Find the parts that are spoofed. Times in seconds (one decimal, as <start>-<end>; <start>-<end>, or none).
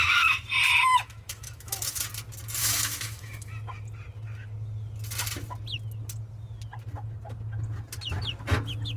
0.9-2.0; 2.6-3.5